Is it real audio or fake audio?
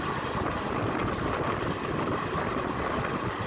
real